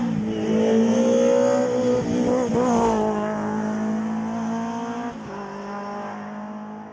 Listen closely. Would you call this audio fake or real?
real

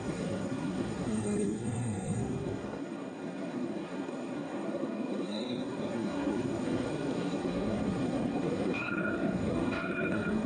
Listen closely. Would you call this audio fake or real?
fake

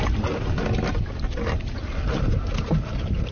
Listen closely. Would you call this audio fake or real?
real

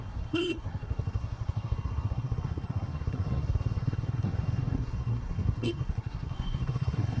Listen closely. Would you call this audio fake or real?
fake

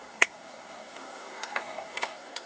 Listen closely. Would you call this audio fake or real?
fake